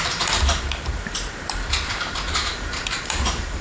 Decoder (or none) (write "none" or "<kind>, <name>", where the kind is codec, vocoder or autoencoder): vocoder, BigVGAN v2